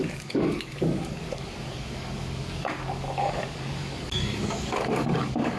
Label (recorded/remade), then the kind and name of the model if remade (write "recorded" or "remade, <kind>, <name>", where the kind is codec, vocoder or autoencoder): remade, codec, DAC